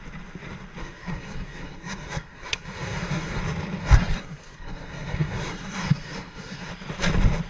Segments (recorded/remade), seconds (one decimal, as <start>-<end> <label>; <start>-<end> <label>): 0.0-0.8 recorded; 0.8-3.4 remade; 3.4-3.8 recorded; 3.8-6.7 remade; 6.7-7.5 recorded